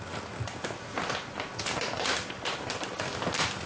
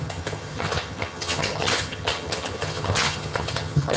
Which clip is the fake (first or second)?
second